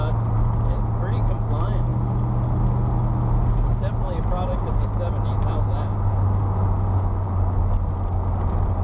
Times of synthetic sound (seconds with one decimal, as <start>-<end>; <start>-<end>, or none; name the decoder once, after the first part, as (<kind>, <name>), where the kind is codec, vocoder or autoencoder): none